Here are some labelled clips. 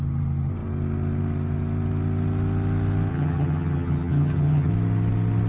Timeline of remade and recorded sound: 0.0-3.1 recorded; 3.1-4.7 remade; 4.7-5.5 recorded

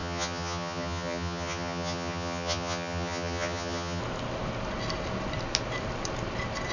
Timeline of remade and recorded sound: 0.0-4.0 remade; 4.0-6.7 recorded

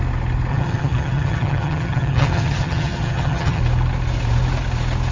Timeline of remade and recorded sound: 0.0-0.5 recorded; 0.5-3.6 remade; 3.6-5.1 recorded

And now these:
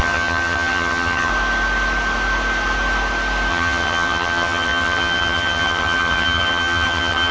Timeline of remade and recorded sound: 0.0-1.3 remade; 1.3-3.5 recorded; 3.5-7.3 remade

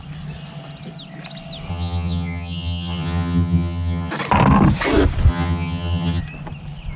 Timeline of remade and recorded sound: 0.0-1.7 recorded; 1.7-4.1 remade; 4.1-5.3 recorded; 5.3-6.2 remade; 6.2-7.0 recorded

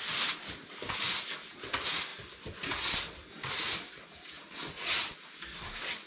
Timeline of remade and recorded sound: 0.0-6.1 recorded